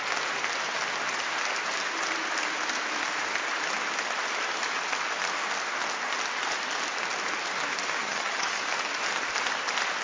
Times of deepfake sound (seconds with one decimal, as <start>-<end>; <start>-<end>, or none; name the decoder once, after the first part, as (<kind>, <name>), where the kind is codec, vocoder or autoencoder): 8.0-8.6 (vocoder, HiFi-GAN)